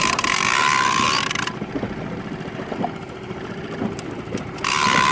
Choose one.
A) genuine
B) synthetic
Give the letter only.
A